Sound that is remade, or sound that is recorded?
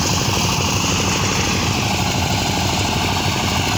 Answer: recorded